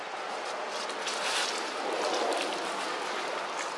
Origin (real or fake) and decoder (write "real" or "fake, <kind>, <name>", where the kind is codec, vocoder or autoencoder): real